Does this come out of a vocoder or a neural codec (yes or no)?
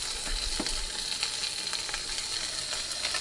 no